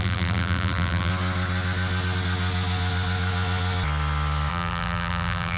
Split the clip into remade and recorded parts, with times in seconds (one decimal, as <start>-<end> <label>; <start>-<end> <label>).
0.0-1.1 remade; 1.1-4.5 recorded; 4.5-5.6 remade